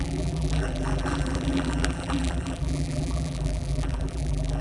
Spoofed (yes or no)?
yes